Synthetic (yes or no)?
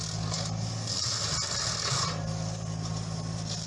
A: no